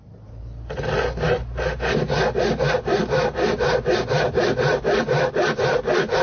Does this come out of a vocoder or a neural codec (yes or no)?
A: no